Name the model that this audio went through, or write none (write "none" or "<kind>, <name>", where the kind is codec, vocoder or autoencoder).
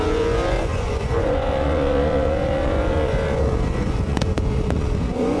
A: vocoder, Vocos